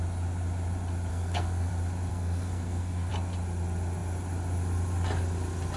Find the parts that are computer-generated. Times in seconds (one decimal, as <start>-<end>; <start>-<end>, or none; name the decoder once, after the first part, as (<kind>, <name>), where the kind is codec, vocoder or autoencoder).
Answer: 1.1-1.7 (codec, SNAC); 2.1-3.1